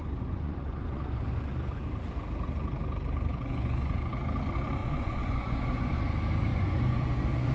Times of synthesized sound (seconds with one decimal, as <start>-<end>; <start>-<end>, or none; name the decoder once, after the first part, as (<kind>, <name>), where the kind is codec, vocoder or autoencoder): 0.0-1.5 (vocoder, Vocos); 3.3-4.1; 4.8-6.0; 6.5-7.5